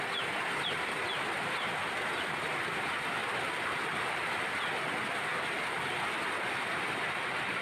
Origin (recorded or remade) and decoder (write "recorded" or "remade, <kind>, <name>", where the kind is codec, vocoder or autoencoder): recorded